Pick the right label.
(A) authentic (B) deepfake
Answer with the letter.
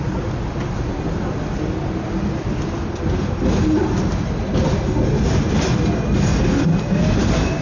A